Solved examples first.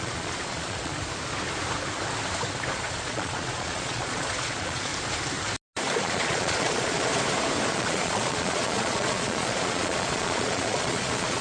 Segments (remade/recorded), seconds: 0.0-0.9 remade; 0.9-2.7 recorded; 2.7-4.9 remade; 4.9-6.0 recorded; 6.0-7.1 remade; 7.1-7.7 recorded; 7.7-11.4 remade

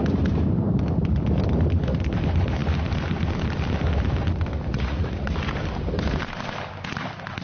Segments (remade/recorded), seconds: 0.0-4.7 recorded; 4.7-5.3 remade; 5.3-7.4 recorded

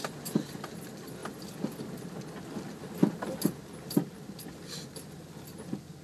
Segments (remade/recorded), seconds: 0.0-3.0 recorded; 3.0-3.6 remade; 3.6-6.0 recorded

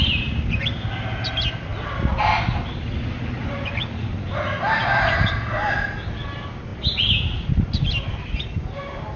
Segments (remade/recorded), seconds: 0.0-9.2 recorded

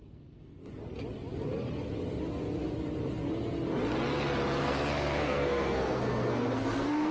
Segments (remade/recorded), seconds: 0.0-0.6 remade; 0.6-4.6 recorded; 4.6-7.1 remade

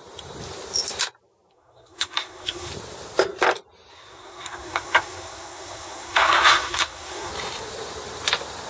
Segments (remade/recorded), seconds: 0.0-1.5 recorded; 1.5-2.7 remade; 2.7-3.9 recorded; 3.9-7.3 remade; 7.3-8.7 recorded

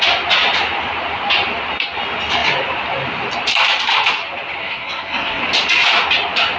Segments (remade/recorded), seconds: 0.0-4.6 recorded; 4.6-5.4 remade; 5.4-6.6 recorded

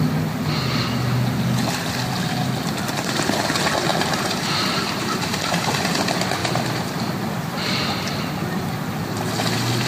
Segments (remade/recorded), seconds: 0.0-3.9 recorded; 3.9-5.9 remade; 5.9-6.4 recorded; 6.4-7.1 remade; 7.1-9.9 recorded